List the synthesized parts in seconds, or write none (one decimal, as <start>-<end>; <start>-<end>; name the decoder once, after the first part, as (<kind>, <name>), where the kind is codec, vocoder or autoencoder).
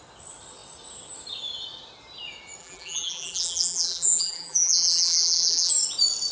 2.6-5.7 (vocoder, BigVGAN v2)